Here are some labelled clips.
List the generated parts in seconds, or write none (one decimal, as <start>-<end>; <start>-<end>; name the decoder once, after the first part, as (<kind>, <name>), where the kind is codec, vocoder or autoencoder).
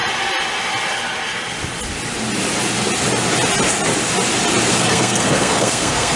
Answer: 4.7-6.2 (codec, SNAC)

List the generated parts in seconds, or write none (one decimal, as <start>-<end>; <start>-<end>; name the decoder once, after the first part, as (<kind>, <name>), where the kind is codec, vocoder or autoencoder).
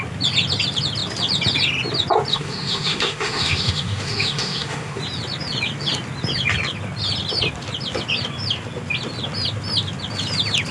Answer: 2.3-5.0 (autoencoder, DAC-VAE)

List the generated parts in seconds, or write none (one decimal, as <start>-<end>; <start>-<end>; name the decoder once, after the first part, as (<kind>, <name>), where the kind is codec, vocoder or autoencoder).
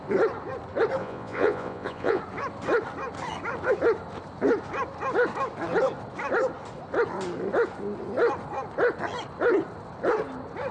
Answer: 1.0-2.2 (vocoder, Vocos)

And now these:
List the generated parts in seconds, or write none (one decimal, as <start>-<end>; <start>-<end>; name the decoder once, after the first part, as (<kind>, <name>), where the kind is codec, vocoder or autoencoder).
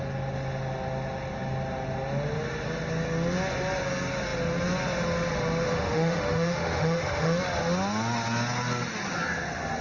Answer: 5.7-7.4 (autoencoder, DAC-VAE)